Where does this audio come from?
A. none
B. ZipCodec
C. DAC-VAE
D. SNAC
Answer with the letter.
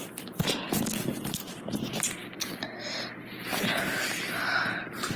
A